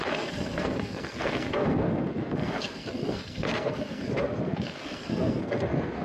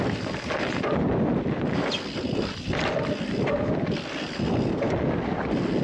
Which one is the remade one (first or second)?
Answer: first